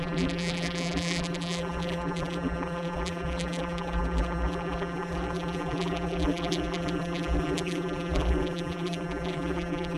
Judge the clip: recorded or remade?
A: remade